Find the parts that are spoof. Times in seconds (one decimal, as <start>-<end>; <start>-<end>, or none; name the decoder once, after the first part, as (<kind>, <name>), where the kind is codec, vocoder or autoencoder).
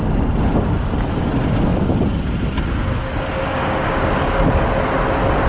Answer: 3.5-4.4 (codec, DAC)